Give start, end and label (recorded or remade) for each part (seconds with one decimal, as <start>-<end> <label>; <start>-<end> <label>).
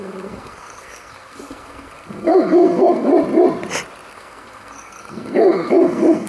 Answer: 0.0-3.1 remade; 3.1-4.1 recorded; 4.1-6.3 remade